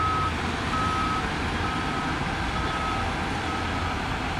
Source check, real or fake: real